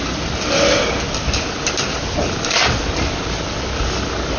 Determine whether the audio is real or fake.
real